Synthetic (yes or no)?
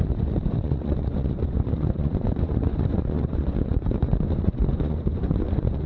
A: yes